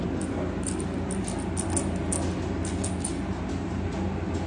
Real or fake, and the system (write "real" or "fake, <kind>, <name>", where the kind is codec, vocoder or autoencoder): real